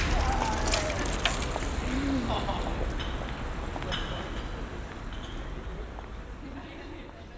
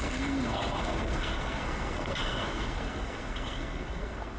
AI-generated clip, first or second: second